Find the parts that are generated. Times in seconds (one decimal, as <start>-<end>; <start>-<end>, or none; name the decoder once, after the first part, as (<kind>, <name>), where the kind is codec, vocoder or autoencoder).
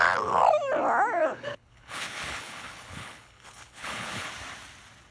1.2-4.3 (codec, HILCodec)